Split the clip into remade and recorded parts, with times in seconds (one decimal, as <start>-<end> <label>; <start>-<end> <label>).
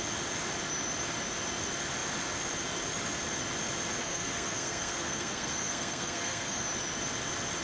0.0-4.0 recorded; 4.0-6.6 remade; 6.6-7.6 recorded